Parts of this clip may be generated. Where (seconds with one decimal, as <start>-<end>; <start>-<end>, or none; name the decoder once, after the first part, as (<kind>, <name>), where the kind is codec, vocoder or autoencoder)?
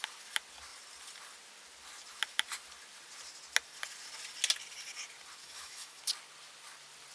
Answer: 5.4-6.0 (autoencoder, DAC-VAE)